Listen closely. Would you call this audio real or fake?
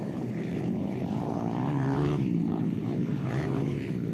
fake